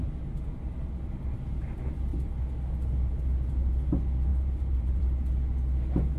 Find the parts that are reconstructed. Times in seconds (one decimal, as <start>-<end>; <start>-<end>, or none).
4.3-5.0